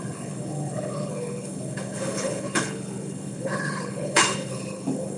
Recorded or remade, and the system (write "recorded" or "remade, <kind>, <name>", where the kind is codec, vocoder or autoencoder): remade, codec, HILCodec